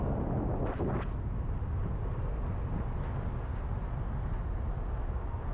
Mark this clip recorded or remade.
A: recorded